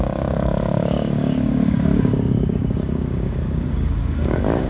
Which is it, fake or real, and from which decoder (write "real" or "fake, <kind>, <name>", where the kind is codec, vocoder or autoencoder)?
fake, codec, DAC